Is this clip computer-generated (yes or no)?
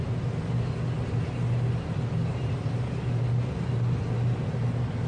no